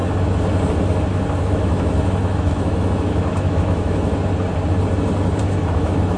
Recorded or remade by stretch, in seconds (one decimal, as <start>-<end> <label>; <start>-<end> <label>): 0.0-1.4 recorded; 1.4-4.1 remade; 4.1-5.4 recorded; 5.4-6.2 remade